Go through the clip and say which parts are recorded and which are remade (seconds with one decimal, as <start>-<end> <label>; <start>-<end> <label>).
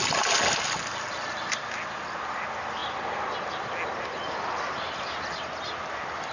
0.0-6.3 recorded